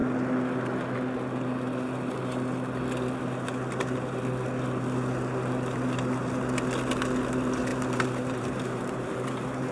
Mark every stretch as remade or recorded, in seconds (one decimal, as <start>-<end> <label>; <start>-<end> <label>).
0.0-7.7 recorded; 7.7-9.7 remade